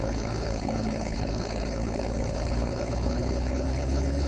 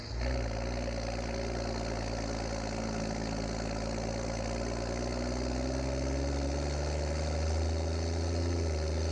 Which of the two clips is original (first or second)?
second